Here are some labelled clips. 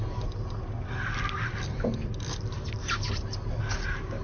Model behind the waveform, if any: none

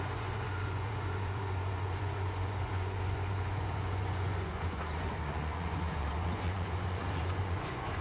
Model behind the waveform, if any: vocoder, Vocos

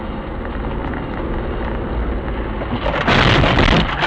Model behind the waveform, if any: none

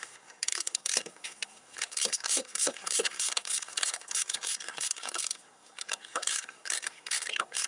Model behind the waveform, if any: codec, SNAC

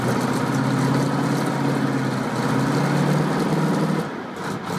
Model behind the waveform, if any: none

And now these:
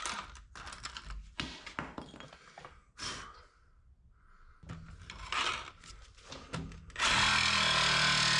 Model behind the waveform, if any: none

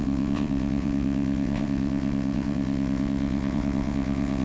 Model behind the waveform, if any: vocoder, WaveNeXt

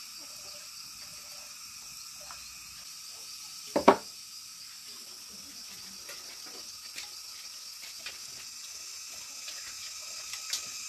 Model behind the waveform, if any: none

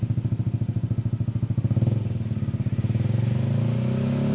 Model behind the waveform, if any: none